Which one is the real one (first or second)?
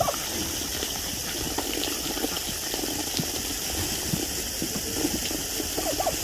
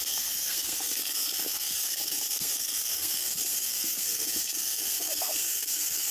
first